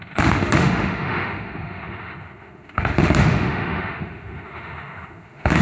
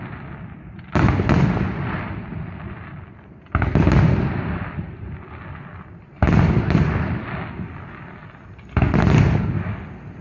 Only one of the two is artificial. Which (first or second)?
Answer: first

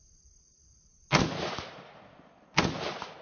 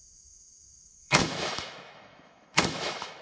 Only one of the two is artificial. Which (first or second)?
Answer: second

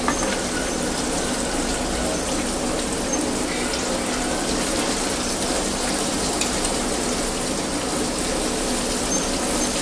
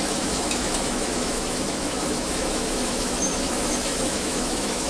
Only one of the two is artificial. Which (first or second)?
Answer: second